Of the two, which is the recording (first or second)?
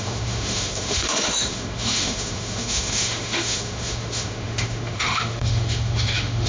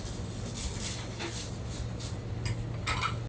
second